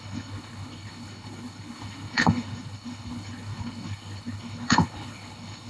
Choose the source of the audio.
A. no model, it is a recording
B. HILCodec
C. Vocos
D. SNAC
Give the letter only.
B